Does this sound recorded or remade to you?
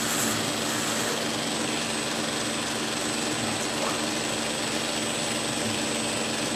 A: recorded